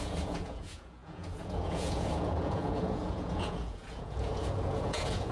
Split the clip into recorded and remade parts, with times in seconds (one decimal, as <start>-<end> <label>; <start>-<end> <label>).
0.0-5.3 remade